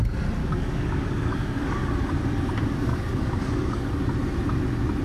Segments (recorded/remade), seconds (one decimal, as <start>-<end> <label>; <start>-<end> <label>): 0.0-0.4 recorded; 0.4-1.9 remade; 1.9-2.9 recorded; 2.9-4.0 remade; 4.0-5.0 recorded